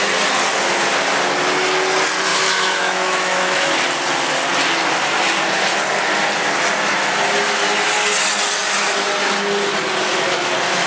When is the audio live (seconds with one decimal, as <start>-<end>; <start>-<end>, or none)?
0.0-2.3; 3.7-10.9